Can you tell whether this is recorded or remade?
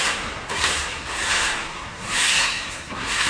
remade